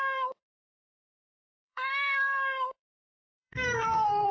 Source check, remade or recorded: remade